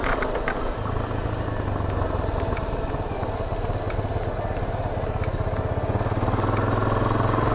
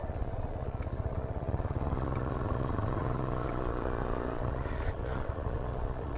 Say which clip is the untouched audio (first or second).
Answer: first